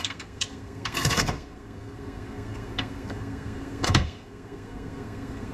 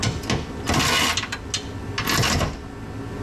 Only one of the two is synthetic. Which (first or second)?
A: first